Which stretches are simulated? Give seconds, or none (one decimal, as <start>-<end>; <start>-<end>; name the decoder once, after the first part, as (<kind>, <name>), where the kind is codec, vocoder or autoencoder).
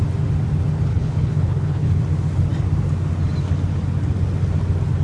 0.9-2.0 (codec, HILCodec)